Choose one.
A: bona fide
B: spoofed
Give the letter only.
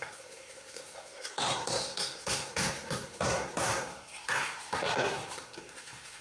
B